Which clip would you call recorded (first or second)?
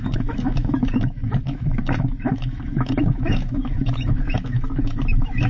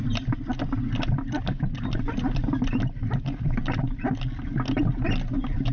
second